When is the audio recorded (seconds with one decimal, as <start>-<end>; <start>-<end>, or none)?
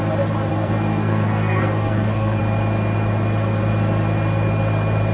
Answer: 0.0-0.5; 2.4-5.1